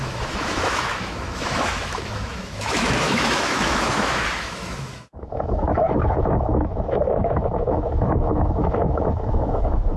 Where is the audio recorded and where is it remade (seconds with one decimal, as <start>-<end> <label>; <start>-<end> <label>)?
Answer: 0.0-10.0 remade